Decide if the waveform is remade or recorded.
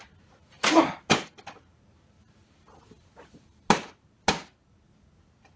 recorded